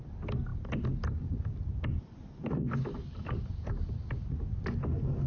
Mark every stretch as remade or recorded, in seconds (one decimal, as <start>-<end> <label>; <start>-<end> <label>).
0.0-5.3 recorded